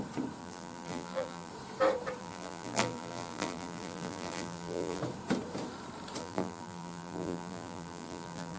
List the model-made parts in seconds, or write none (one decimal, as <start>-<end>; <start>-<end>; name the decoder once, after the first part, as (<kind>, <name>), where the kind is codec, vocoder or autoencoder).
0.4-1.5 (vocoder, BigVGAN v2); 2.2-5.0; 6.2-8.6